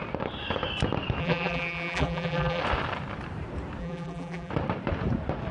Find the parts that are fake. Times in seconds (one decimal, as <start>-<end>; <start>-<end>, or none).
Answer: 1.2-2.6; 3.8-4.5